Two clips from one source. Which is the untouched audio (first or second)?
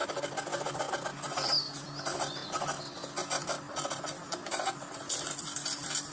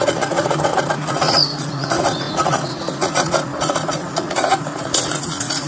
first